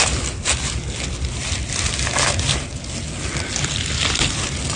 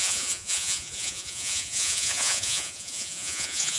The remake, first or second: second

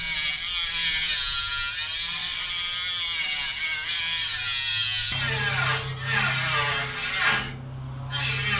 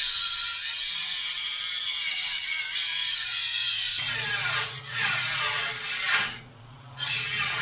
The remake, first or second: second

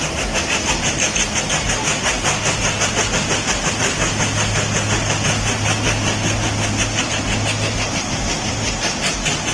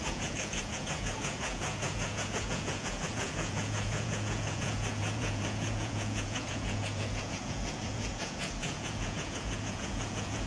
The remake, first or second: second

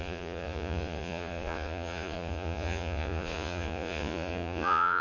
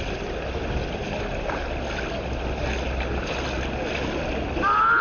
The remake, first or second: first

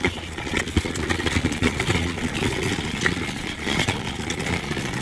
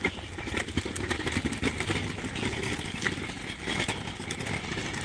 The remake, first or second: first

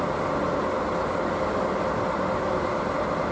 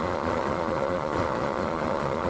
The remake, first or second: second